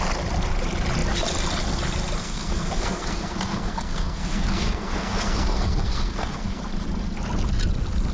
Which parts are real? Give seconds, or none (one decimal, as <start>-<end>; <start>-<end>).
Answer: 0.0-2.2; 6.6-8.1